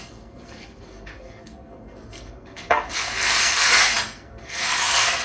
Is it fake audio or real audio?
fake